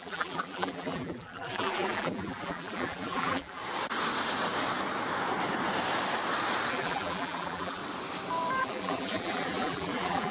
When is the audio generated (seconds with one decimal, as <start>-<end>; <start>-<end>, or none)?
0.0-3.6; 6.7-7.8; 8.6-10.3